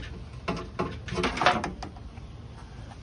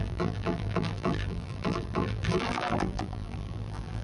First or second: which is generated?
second